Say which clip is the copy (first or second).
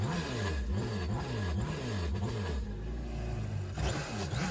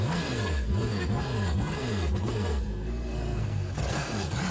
second